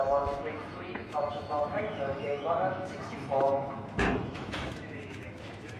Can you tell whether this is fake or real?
fake